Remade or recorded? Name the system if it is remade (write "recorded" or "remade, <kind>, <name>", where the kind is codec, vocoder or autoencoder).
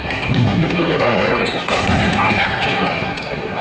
remade, codec, SNAC